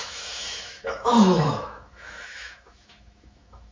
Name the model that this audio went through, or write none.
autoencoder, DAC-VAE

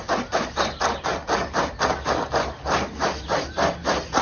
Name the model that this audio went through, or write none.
none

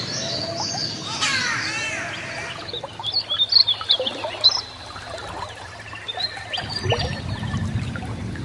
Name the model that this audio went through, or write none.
none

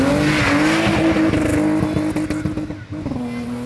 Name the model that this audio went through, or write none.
none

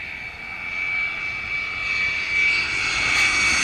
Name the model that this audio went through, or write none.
none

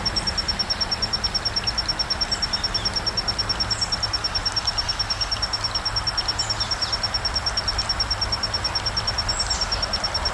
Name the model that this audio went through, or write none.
none